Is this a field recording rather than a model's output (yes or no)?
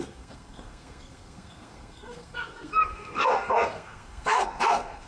no